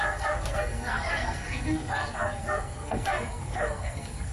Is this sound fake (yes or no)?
yes